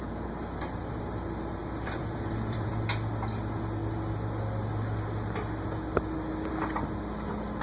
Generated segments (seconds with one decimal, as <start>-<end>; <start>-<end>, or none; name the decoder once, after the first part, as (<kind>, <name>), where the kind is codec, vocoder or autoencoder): 1.6-2.7 (vocoder, BigVGAN v2)